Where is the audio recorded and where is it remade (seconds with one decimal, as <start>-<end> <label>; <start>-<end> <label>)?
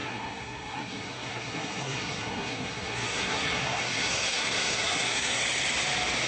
0.0-5.4 remade; 5.4-6.3 recorded